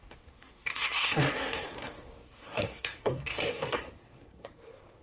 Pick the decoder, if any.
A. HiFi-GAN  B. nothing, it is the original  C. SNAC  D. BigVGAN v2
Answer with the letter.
C